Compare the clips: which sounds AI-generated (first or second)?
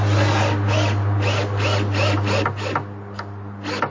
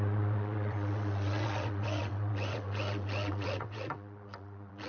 second